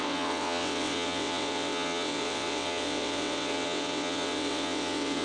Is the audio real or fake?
fake